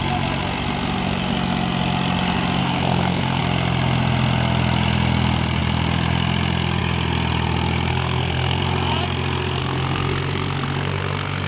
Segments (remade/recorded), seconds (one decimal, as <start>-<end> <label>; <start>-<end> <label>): 0.0-2.6 recorded; 2.6-3.4 remade; 3.4-7.9 recorded; 7.9-8.6 remade; 8.6-9.6 recorded; 9.6-11.5 remade

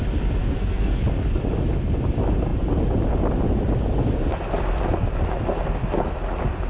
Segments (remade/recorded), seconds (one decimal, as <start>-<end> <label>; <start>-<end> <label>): 0.0-0.4 recorded; 0.4-1.0 remade; 1.0-6.7 recorded

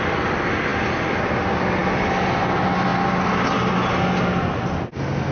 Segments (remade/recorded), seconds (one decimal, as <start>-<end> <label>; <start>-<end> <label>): 0.0-5.3 recorded

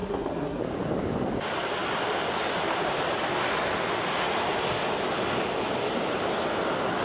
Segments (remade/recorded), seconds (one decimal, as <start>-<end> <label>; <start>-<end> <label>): 0.0-0.6 remade; 0.6-7.0 recorded

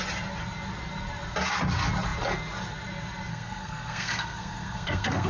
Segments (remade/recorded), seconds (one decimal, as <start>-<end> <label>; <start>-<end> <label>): 0.0-3.3 recorded; 3.3-5.3 remade

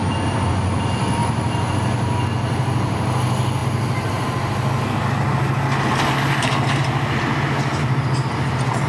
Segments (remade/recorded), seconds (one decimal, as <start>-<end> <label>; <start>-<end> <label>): 0.0-8.9 recorded